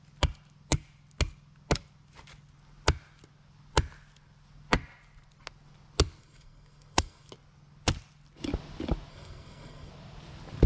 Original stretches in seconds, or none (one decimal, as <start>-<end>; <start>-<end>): 0.0-6.2; 7.3-9.1; 9.9-10.7